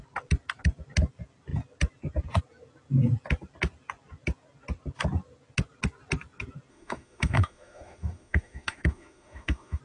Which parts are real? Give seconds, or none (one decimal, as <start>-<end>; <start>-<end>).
0.0-6.7